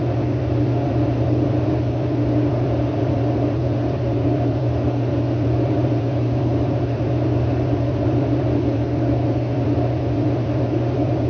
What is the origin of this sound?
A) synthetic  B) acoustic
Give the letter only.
A